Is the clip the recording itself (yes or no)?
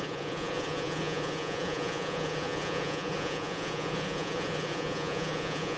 no